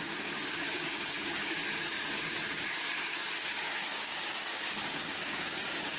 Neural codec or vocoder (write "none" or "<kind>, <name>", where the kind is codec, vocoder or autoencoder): codec, DAC